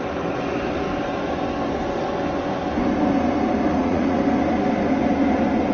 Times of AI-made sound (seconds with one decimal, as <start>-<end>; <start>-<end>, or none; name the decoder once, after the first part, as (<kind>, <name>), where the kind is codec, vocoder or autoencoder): 3.7-4.2 (vocoder, Vocos)